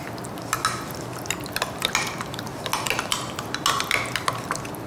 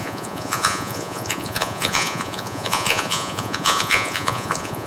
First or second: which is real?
first